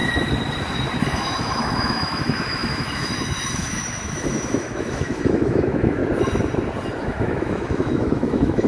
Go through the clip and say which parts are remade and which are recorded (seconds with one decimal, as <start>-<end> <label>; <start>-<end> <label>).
0.0-1.0 recorded; 1.0-6.0 remade; 6.0-7.0 recorded; 7.0-8.7 remade